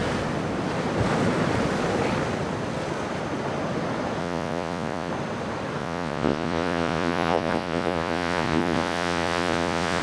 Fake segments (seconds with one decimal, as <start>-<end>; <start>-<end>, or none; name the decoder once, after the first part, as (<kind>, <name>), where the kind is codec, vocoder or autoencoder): 4.2-5.1 (vocoder, Vocos); 5.8-10.0